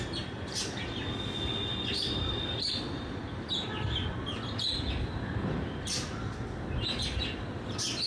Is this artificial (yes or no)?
no